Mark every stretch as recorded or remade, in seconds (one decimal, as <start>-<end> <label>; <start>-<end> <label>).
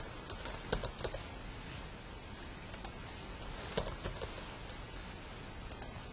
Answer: 0.0-6.1 recorded